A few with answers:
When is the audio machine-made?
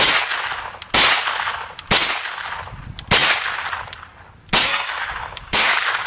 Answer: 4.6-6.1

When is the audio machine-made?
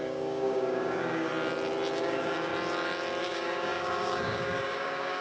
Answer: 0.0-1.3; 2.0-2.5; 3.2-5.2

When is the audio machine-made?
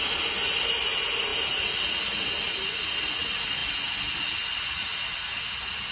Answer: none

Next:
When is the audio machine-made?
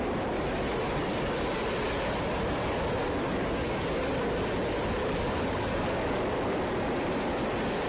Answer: 3.0-3.5; 5.0-6.6